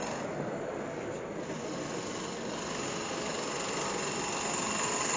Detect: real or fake real